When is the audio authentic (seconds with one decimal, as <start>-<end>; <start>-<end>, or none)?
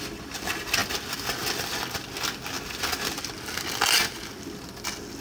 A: 0.0-5.2